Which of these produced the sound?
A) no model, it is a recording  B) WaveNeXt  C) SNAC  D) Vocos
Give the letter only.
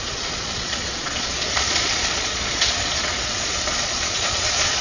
D